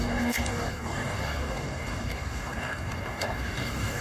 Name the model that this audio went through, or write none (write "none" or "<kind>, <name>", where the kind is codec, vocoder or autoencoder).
codec, DAC